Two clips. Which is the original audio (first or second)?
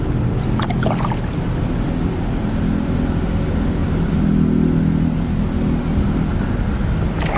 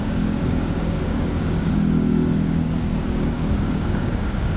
first